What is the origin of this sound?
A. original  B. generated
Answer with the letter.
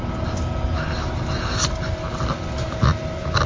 A